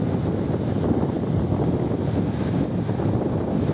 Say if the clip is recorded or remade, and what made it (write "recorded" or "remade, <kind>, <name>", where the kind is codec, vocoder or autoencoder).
recorded